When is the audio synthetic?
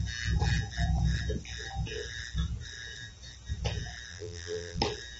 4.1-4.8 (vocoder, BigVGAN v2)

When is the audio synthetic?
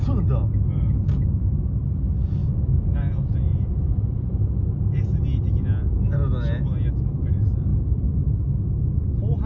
2.4-4.0 (vocoder, Vocos)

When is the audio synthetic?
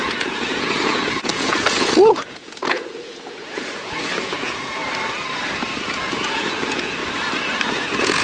0.0-4.8 (vocoder, Vocos); 5.8-7.0; 7.7-8.2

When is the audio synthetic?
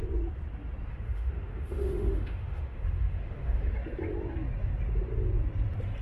0.9-3.7 (autoencoder, DAC-VAE)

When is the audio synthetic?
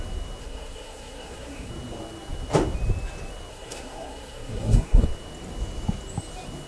0.4-1.7 (codec, SNAC); 3.5-5.0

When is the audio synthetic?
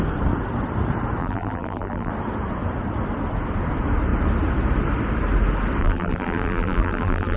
1.2-2.1 (vocoder, BigVGAN v2); 5.8-7.4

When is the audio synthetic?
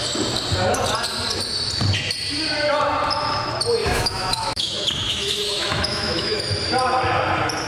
3.8-6.4 (autoencoder, DAC-VAE)